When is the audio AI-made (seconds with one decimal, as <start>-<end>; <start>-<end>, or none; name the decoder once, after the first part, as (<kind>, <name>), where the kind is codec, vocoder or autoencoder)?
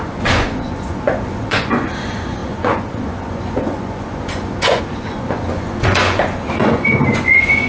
0.0-7.7 (vocoder, Vocos)